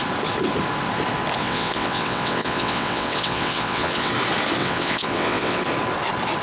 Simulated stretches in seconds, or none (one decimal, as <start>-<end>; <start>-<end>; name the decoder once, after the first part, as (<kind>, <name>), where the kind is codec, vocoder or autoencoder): 1.4-4.1 (vocoder, WaveNeXt); 4.6-5.6

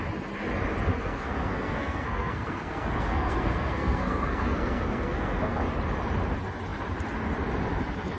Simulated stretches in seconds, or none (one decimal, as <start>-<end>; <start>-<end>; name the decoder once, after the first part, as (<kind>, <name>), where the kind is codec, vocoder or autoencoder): 0.9-5.6 (codec, SNAC)

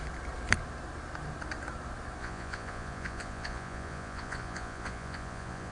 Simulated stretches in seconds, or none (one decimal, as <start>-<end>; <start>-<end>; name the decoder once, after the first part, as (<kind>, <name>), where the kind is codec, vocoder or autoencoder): 2.2-5.7 (vocoder, Vocos)

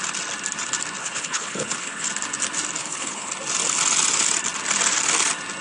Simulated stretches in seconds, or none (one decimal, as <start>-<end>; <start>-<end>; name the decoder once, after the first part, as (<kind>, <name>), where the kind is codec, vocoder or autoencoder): 1.0-2.1 (codec, HILCodec); 2.8-3.3

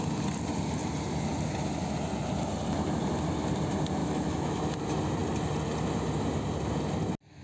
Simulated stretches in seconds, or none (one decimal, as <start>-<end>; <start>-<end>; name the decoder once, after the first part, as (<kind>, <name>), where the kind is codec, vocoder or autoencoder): 4.0-4.6 (autoencoder, DAC-VAE)

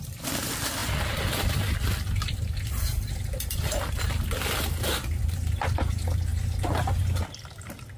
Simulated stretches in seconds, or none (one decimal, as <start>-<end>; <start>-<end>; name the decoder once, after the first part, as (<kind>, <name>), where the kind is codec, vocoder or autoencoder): 0.0-8.0 (vocoder, BigVGAN v2)

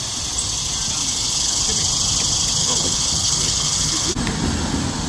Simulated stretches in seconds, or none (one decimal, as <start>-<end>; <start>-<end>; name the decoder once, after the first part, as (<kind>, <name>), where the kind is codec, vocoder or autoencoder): 1.0-1.6 (codec, HILCodec); 2.6-4.1

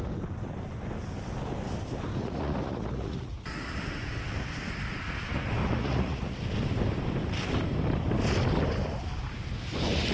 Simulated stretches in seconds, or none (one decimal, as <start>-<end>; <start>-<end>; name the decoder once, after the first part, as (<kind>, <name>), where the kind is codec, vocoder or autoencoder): 2.2-3.7 (vocoder, Vocos); 5.6-6.4